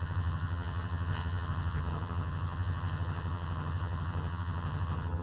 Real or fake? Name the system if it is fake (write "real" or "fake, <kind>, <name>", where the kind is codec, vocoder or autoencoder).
fake, vocoder, HiFi-GAN